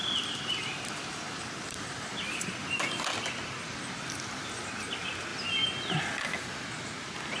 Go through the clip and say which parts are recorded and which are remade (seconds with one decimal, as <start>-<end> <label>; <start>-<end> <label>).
0.0-4.4 remade; 4.4-7.4 recorded